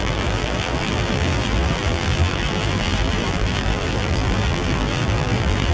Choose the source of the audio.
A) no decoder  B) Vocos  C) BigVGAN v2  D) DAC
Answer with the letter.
C